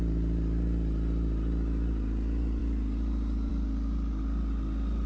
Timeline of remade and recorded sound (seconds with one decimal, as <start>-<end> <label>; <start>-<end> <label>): 0.0-5.1 recorded